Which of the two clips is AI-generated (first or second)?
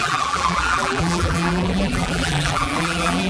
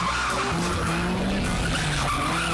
first